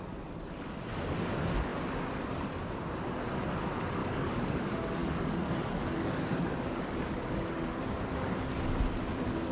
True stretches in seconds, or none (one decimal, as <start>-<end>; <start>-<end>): 0.0-4.0; 4.6-5.0; 7.8-9.5